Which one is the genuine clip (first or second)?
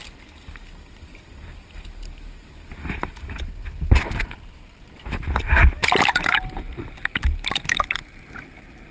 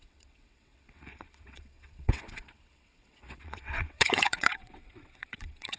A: first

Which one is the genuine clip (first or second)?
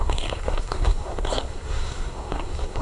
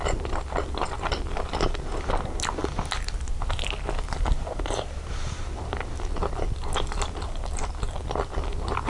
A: second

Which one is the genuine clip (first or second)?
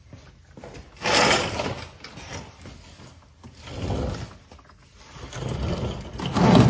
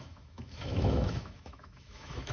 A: first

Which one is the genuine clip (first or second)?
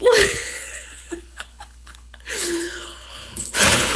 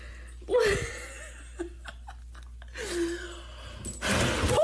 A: second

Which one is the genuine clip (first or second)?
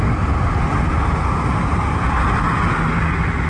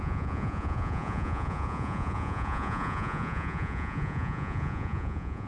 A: first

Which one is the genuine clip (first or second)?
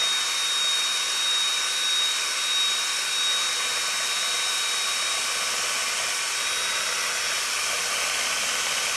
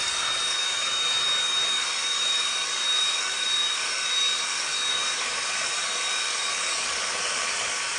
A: first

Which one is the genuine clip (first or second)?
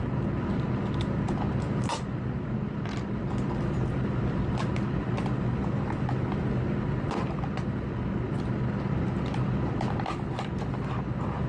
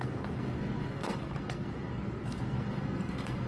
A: first